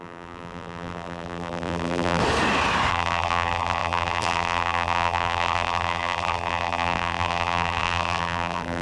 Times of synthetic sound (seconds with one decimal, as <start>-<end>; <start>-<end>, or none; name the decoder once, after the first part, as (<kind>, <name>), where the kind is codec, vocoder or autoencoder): 0.0-2.2 (vocoder, BigVGAN v2); 2.9-8.8